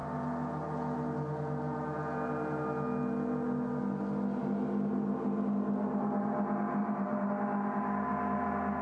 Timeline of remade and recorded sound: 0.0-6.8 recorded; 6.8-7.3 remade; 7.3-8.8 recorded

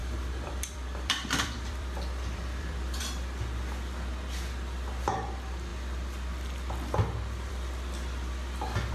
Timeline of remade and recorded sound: 0.0-3.0 remade; 3.0-8.9 recorded

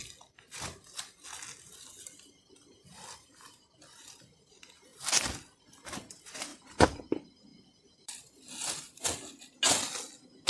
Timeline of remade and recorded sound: 0.0-6.5 recorded; 6.5-7.0 remade; 7.0-7.5 recorded; 7.5-8.3 remade; 8.3-10.5 recorded